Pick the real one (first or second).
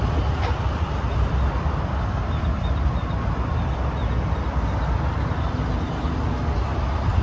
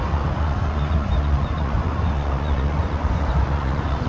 first